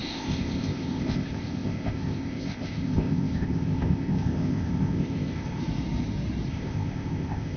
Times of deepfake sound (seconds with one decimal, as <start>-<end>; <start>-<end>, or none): 0.0-5.6; 6.5-7.6

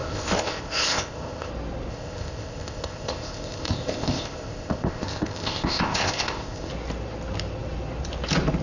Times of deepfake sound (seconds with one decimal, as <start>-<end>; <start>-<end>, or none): 0.0-1.5; 1.9-6.7

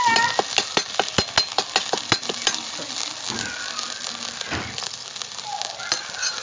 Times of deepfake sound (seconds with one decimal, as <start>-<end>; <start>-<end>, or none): none

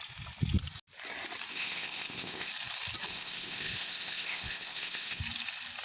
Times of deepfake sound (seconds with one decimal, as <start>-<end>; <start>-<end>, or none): 1.5-2.5; 3.1-5.2

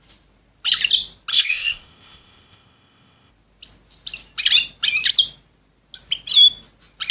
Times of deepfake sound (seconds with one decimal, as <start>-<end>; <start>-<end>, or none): 1.3-3.3